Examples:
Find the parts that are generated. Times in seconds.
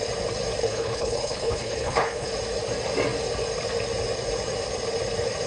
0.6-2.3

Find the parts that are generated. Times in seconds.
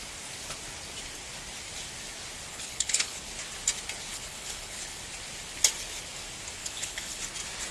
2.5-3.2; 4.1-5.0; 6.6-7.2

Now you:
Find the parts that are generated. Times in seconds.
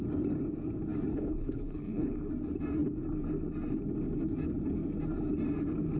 1.1-2.3